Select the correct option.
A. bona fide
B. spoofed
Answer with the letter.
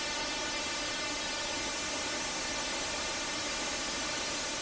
A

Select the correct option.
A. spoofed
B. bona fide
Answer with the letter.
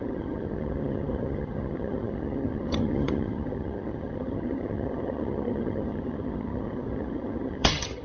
A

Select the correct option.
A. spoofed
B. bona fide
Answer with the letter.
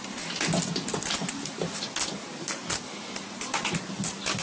B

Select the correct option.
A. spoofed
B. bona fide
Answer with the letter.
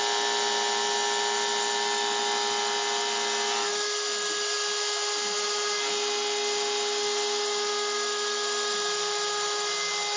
B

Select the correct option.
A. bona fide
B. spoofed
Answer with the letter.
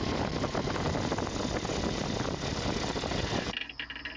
A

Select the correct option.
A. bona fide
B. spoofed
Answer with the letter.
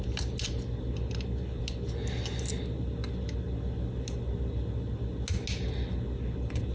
A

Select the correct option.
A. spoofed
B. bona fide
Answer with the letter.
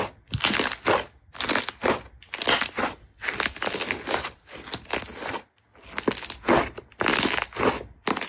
B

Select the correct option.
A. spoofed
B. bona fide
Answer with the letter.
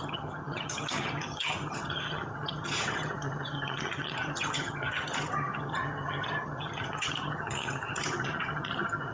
A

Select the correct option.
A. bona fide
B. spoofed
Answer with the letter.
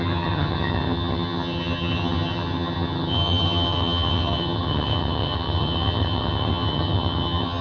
B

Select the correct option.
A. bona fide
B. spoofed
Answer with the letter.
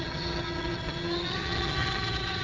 B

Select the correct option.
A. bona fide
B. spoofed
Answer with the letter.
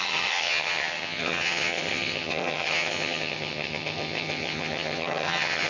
B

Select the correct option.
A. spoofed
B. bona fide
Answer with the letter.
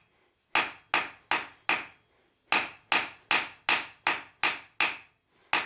B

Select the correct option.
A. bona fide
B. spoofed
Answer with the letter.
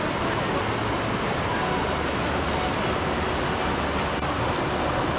A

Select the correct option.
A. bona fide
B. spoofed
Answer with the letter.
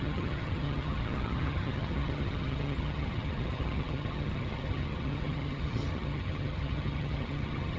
B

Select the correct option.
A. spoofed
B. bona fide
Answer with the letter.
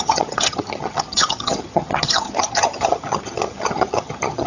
A